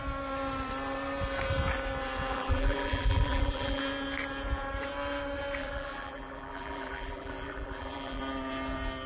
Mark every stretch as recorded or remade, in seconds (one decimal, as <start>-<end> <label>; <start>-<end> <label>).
0.0-2.3 recorded; 2.3-3.8 remade; 3.8-5.6 recorded; 5.6-8.2 remade; 8.2-9.1 recorded